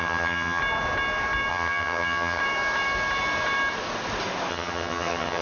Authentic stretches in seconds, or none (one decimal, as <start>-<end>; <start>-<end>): 0.6-1.5; 2.4-4.5